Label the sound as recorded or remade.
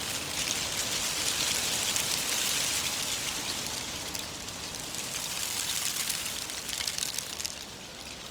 recorded